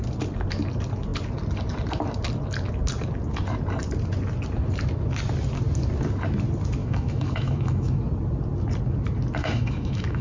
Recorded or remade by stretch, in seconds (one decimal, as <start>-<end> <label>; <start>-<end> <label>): 0.0-6.8 recorded; 6.8-8.0 remade; 8.0-9.4 recorded; 9.4-10.2 remade